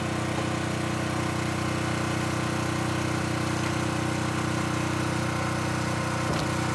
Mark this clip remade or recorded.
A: recorded